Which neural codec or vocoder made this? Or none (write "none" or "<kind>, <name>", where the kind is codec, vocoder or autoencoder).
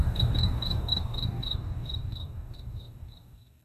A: codec, DAC